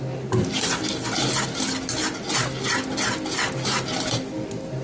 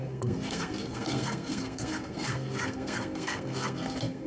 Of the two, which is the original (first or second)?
first